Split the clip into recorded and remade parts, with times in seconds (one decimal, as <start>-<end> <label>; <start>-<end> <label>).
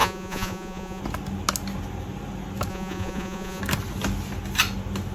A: 0.0-1.0 remade; 1.0-2.7 recorded; 2.7-3.6 remade; 3.6-5.1 recorded